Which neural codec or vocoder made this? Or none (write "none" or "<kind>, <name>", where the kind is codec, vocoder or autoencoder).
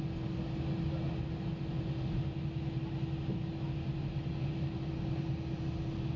none